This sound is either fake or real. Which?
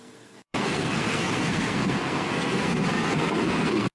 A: fake